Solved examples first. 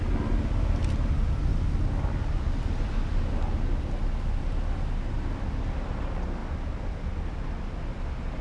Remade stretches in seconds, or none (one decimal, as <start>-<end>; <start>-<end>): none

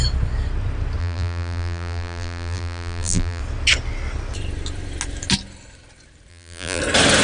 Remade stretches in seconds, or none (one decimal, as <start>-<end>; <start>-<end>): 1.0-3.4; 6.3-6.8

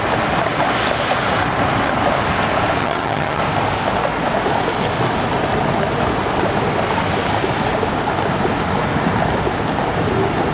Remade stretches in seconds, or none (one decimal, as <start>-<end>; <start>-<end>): 2.8-3.4

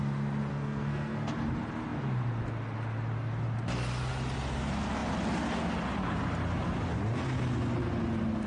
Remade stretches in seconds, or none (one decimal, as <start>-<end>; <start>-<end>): 0.5-1.3

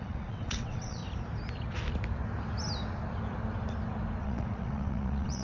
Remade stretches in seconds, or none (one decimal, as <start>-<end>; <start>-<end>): 0.0-1.0; 4.2-5.4